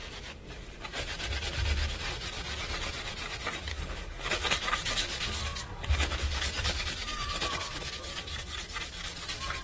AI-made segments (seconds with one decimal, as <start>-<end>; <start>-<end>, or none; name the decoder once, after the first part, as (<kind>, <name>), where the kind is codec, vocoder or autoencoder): 3.7-8.4 (codec, DAC)